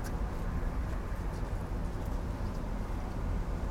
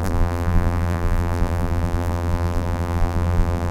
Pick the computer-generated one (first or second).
second